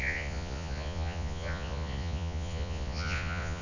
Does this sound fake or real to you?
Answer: fake